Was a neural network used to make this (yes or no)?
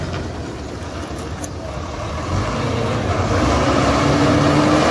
no